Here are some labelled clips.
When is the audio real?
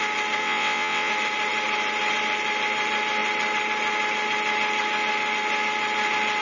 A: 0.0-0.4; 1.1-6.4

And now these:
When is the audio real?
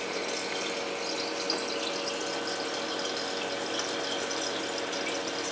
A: 0.0-5.5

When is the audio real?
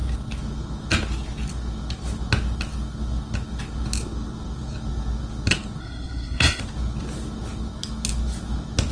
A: 0.0-5.8; 6.6-8.9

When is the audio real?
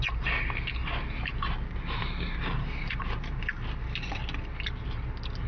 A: 0.0-5.5